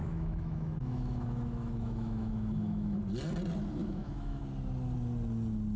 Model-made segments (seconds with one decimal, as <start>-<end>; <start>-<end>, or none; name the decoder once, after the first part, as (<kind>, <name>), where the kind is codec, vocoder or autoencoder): 0.0-3.0 (autoencoder, DAC-VAE); 3.8-4.4